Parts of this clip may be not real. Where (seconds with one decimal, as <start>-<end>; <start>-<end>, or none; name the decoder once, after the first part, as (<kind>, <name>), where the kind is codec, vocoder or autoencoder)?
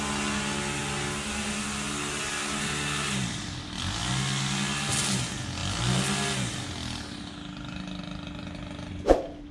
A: none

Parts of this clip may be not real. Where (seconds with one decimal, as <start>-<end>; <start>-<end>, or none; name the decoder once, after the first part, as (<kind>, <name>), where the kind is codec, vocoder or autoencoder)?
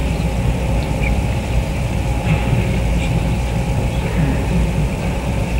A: 0.0-2.4 (vocoder, BigVGAN v2); 2.9-5.6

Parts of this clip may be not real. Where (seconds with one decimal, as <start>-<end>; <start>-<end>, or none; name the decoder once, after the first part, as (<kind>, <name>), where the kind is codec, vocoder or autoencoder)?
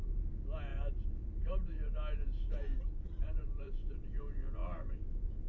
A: 0.7-1.7 (vocoder, BigVGAN v2); 2.7-4.1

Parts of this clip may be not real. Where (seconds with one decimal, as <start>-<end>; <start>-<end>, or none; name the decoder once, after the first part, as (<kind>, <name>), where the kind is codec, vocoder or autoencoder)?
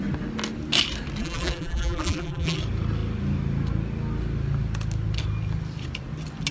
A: 1.2-2.6 (vocoder, BigVGAN v2)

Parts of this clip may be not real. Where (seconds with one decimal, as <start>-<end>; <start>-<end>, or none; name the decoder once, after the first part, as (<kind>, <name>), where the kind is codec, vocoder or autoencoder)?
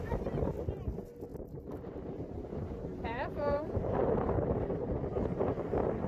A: 1.3-5.0 (vocoder, BigVGAN v2)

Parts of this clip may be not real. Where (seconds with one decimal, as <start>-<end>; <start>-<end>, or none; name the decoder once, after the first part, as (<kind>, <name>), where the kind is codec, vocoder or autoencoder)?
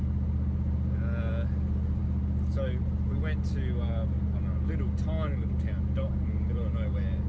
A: none